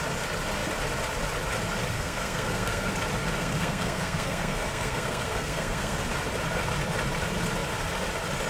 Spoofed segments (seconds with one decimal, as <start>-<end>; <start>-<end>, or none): 1.9-2.9; 3.4-6.0